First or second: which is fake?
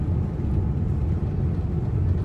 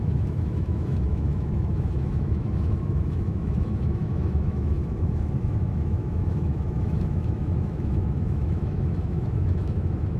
second